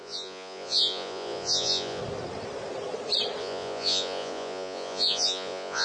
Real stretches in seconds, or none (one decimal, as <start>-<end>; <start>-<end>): 2.0-3.4